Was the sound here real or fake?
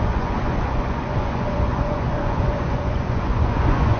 fake